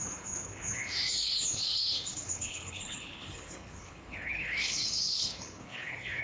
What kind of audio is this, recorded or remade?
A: remade